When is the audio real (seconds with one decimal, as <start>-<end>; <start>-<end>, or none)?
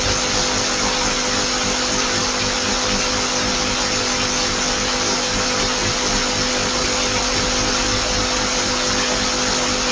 0.0-9.9